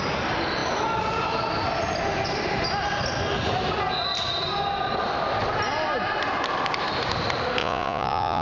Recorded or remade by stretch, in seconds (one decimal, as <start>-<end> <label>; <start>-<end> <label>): 0.0-7.6 recorded; 7.6-8.4 remade